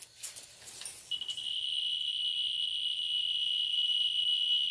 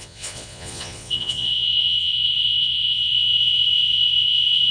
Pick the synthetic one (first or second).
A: second